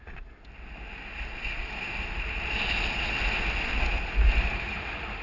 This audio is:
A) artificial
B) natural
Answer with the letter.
B